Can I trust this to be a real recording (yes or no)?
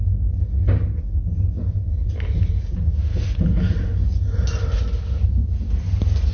yes